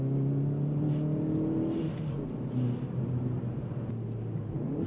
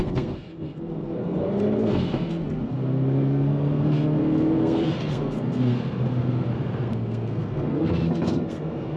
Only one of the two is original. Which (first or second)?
first